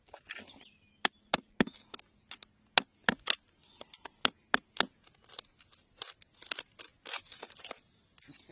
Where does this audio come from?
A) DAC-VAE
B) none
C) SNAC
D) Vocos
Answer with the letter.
B